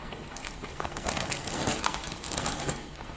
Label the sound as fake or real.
fake